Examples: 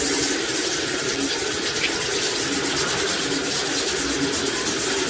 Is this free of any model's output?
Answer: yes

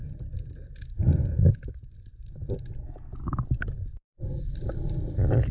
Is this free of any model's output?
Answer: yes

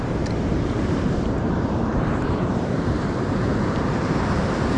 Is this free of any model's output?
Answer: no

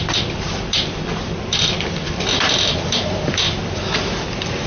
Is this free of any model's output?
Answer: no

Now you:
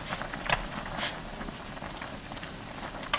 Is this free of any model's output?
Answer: yes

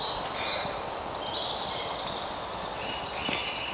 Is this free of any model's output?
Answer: yes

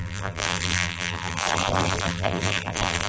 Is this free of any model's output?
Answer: no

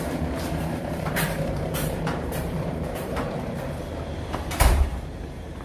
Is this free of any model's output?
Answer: no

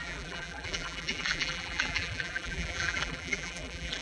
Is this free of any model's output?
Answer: no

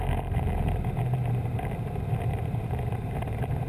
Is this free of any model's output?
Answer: no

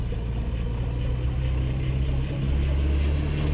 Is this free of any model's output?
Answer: yes